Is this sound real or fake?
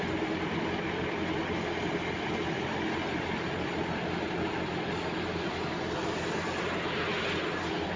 real